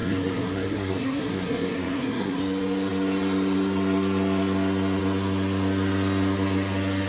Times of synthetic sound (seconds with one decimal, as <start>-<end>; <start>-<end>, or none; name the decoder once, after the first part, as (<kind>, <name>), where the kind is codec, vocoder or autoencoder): 0.0-2.4 (codec, SNAC)